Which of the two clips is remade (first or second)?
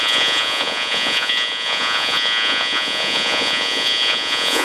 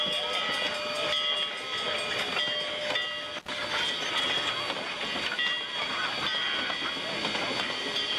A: first